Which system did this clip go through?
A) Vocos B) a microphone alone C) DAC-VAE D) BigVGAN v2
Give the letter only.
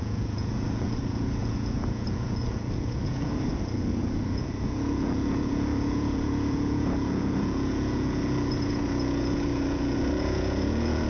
A